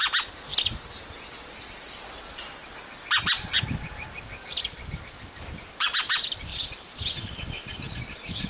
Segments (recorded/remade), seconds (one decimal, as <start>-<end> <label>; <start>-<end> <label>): 0.0-0.5 remade; 0.5-3.4 recorded; 3.4-8.5 remade